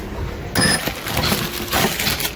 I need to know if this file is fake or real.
real